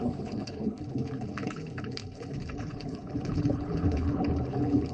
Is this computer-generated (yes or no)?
yes